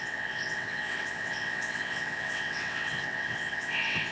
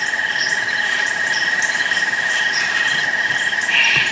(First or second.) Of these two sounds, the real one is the second